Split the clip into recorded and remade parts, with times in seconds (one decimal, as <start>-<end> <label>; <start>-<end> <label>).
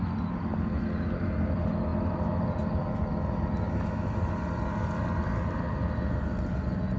0.0-7.0 recorded